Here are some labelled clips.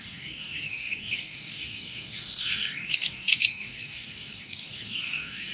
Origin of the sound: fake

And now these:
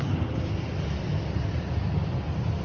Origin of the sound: real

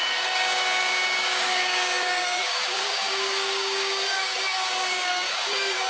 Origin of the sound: fake